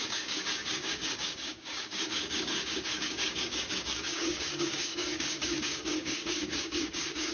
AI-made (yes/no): yes